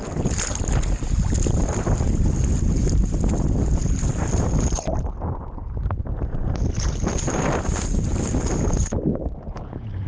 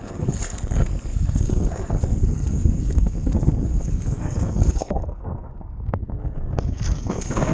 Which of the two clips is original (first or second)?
first